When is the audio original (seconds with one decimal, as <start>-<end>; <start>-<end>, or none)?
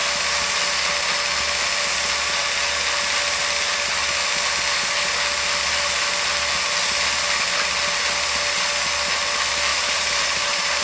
0.0-9.7